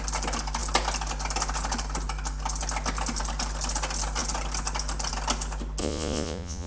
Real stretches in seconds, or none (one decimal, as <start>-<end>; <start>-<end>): 0.0-5.8